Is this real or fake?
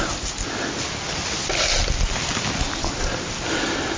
real